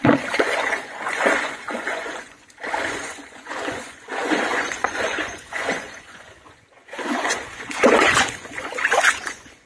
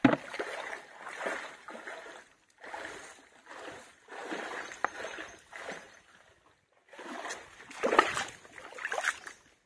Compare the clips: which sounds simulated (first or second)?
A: first